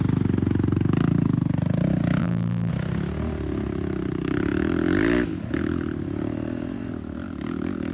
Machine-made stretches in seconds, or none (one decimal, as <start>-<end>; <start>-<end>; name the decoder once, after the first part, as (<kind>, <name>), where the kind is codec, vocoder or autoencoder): 2.2-2.7 (vocoder, BigVGAN v2)